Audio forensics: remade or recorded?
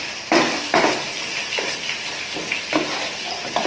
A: recorded